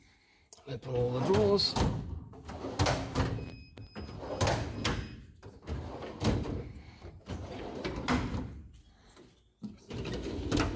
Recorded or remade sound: recorded